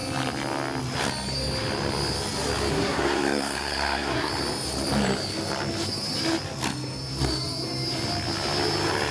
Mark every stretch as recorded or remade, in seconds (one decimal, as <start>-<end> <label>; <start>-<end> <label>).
0.0-2.7 recorded; 2.7-4.3 remade; 4.3-9.1 recorded